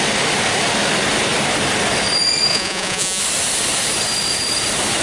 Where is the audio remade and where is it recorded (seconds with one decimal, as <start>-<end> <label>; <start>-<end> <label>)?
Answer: 0.0-2.5 recorded; 2.5-3.2 remade; 3.2-5.0 recorded